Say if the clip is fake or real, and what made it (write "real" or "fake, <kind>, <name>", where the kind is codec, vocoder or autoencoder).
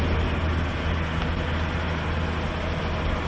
real